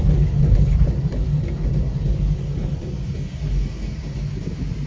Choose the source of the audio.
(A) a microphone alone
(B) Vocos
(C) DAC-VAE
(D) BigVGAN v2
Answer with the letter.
A